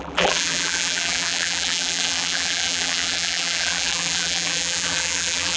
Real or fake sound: fake